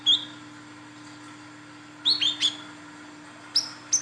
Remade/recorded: recorded